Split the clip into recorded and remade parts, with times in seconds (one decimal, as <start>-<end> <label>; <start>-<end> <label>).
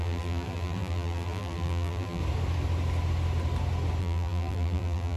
0.0-2.2 remade; 2.2-4.0 recorded; 4.0-5.2 remade